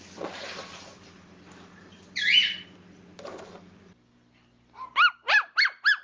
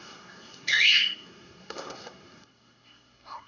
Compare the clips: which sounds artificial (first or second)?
second